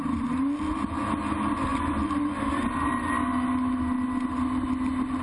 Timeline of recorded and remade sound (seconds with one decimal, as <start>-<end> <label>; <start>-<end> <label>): 0.0-5.2 recorded